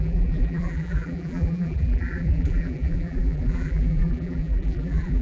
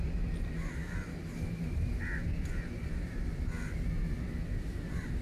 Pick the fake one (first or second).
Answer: first